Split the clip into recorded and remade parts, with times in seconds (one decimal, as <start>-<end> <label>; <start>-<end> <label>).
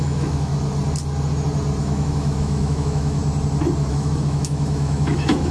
0.0-0.5 remade; 0.5-1.8 recorded; 1.8-3.2 remade; 3.2-3.9 recorded; 3.9-5.5 remade